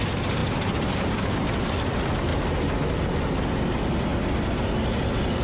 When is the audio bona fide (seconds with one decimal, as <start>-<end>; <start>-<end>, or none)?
0.0-5.4